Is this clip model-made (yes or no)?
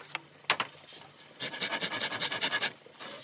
no